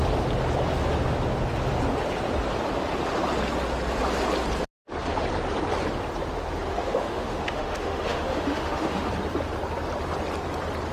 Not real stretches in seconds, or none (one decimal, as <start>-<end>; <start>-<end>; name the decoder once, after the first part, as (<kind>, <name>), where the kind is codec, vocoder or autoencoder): 6.7-9.1 (autoencoder, DAC-VAE)